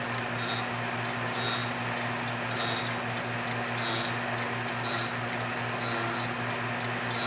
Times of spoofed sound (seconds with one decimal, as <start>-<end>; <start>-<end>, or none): none